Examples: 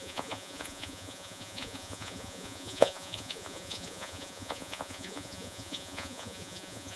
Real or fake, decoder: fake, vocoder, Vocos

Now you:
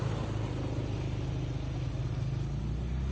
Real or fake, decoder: real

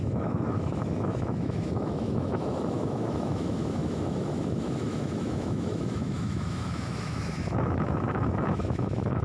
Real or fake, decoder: fake, autoencoder, DAC-VAE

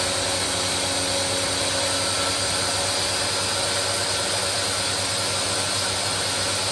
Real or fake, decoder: real